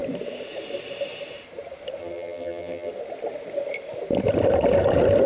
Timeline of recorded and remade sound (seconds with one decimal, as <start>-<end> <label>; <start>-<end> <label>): 0.0-2.0 recorded; 2.0-2.9 remade; 2.9-5.3 recorded